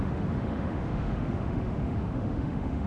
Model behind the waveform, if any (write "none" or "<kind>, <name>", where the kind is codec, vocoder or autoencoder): autoencoder, DAC-VAE